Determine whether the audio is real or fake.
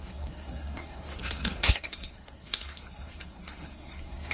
fake